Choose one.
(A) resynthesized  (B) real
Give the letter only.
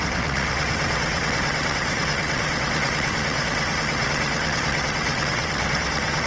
A